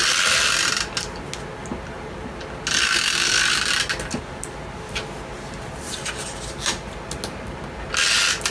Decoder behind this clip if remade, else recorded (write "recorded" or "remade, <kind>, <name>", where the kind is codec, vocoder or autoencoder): recorded